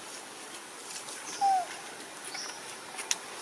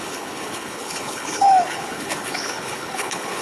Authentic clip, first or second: first